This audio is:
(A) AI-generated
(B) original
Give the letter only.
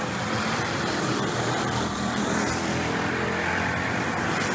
A